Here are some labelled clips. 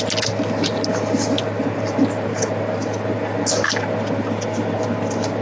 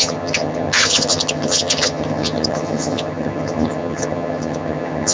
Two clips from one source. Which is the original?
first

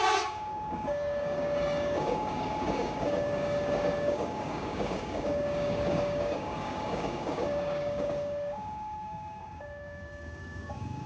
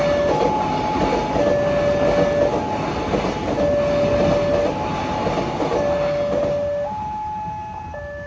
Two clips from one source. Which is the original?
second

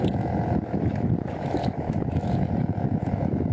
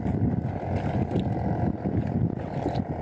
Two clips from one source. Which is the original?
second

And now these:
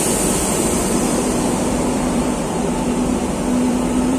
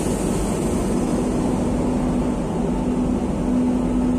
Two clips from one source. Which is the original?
second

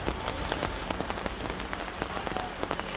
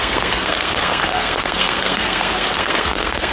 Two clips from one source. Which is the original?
first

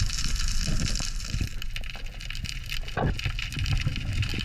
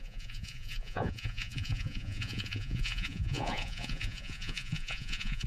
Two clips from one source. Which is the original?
first